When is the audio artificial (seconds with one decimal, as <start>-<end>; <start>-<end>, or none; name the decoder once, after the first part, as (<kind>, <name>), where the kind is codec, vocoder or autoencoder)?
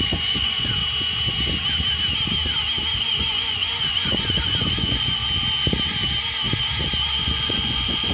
0.0-0.8 (vocoder, Vocos); 3.0-5.2; 7.2-8.1